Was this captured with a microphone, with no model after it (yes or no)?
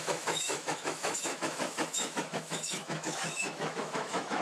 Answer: no